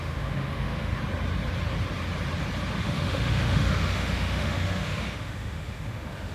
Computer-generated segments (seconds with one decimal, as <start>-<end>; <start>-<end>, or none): 0.0-1.0; 2.8-6.3